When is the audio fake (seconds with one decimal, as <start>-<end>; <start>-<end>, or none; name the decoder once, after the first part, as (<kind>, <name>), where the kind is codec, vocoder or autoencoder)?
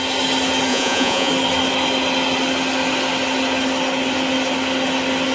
0.7-1.3 (vocoder, Vocos)